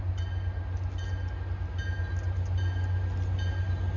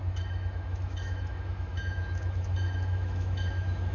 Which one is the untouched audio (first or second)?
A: first